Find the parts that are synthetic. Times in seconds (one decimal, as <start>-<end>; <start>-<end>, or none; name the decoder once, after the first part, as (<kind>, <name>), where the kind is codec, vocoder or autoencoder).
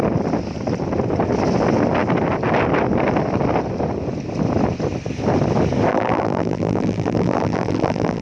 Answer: 5.9-8.2 (vocoder, BigVGAN v2)